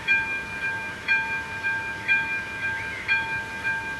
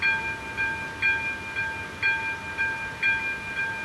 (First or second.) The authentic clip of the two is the second